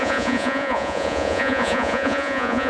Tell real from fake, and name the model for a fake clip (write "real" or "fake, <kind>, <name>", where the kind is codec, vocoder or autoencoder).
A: fake, vocoder, Vocos